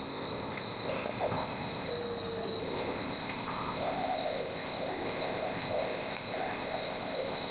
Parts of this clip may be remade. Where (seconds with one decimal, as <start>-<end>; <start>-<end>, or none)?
0.0-1.9; 2.6-7.5